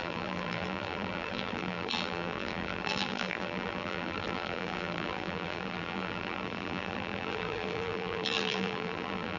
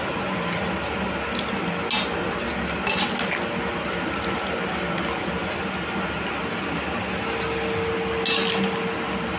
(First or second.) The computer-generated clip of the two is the first